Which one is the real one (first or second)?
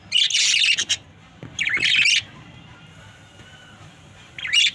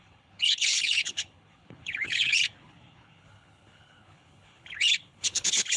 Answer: first